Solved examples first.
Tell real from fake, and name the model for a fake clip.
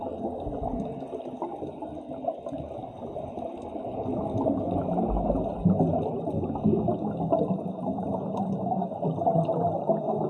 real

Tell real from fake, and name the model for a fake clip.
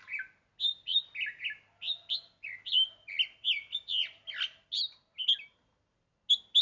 real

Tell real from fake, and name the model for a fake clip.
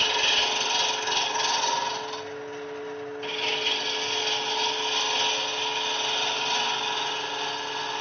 real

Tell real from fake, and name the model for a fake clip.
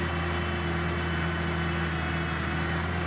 real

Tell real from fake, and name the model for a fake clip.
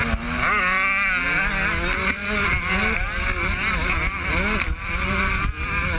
real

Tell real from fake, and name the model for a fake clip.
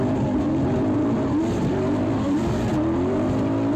fake, vocoder, BigVGAN v2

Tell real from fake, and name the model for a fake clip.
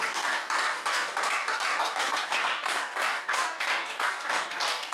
fake, codec, DAC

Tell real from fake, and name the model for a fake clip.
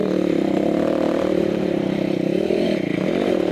fake, vocoder, BigVGAN v2